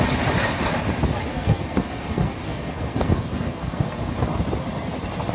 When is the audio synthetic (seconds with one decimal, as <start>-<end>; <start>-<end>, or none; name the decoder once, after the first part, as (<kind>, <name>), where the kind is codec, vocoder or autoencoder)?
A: 1.3-4.0 (codec, SNAC)

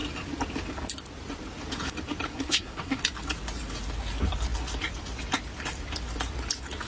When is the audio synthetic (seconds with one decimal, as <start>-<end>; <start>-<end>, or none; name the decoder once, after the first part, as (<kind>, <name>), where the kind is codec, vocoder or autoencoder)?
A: 2.3-3.0 (codec, SNAC)

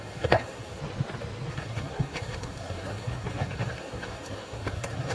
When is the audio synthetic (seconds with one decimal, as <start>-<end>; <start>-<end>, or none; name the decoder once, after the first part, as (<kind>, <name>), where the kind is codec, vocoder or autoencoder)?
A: 0.0-0.8 (codec, SNAC); 1.5-5.1

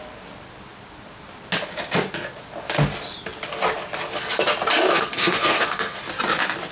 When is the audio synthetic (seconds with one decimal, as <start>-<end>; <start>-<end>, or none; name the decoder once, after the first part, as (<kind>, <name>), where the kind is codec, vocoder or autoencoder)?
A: 4.9-6.0 (codec, SNAC)